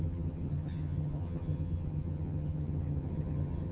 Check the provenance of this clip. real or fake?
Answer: fake